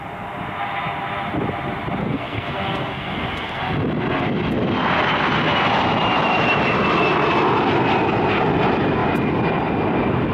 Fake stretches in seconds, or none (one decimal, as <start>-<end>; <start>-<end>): 2.0-3.6